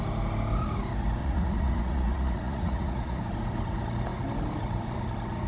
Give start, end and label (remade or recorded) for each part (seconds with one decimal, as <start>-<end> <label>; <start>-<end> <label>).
0.0-1.2 recorded; 1.2-3.2 remade; 3.2-5.5 recorded